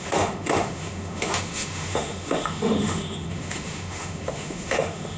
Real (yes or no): no